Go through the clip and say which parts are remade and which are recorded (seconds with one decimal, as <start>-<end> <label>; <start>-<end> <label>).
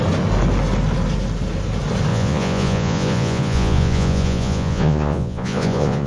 0.0-2.1 recorded; 2.1-6.1 remade